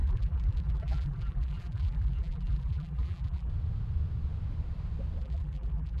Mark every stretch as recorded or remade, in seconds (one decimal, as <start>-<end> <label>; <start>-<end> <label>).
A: 0.0-3.5 remade; 3.5-5.2 recorded; 5.2-6.0 remade